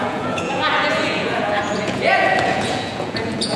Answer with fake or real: fake